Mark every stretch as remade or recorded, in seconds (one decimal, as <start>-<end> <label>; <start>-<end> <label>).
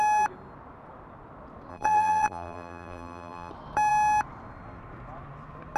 0.0-1.7 recorded; 1.7-3.5 remade; 3.5-5.8 recorded